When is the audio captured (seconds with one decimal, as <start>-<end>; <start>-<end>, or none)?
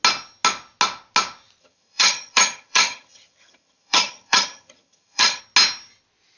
0.0-1.6; 5.4-6.4